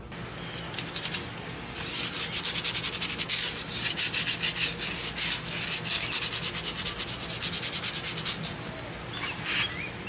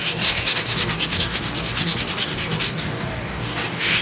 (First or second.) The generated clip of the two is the second